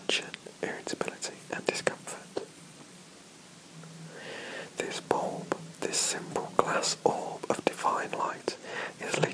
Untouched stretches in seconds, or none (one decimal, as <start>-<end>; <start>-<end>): 0.5-1.3; 3.0-8.2